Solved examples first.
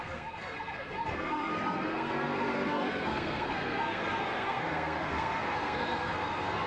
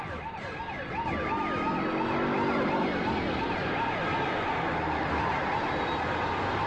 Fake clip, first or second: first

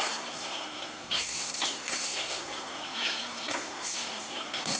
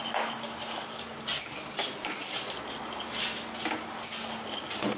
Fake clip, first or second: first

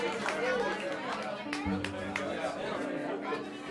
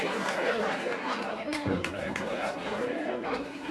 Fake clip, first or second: second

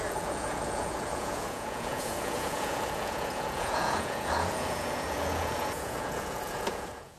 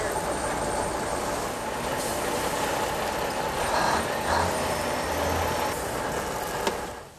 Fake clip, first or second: first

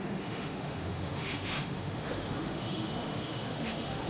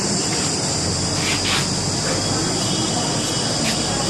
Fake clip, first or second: first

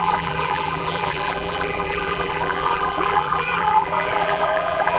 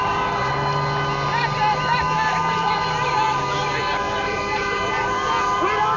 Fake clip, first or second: first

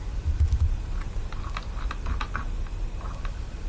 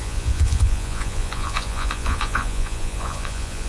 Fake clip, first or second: second